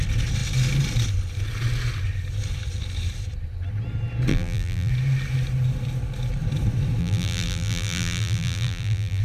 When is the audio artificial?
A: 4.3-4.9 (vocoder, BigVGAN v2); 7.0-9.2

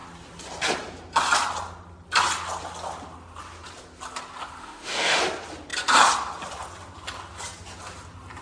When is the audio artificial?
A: 4.6-5.2 (autoencoder, DAC-VAE)

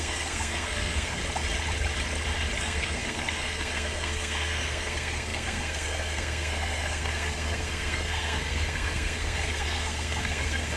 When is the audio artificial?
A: 0.0-1.2 (codec, SNAC); 2.6-10.8

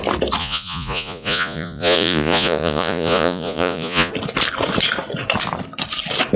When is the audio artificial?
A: 0.4-4.1 (vocoder, Vocos)

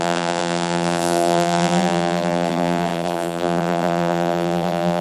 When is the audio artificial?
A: 0.0-5.0 (vocoder, BigVGAN v2)

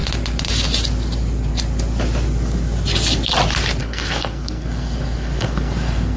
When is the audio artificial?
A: 3.8-6.2 (codec, SNAC)

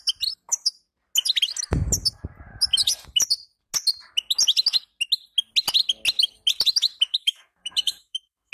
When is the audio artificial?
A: 7.1-8.5 (autoencoder, DAC-VAE)